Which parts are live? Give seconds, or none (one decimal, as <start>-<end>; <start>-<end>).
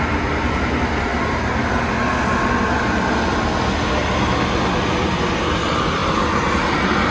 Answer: 0.0-7.1